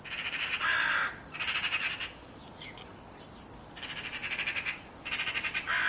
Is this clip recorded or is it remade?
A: recorded